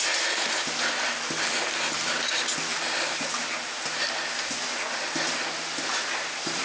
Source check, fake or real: real